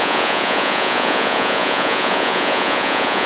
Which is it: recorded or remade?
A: remade